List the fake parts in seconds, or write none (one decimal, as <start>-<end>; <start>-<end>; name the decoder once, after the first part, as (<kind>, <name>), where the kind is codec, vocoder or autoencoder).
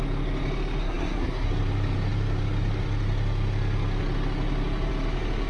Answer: 0.8-1.5 (codec, SNAC)